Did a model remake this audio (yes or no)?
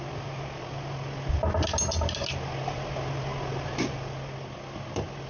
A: no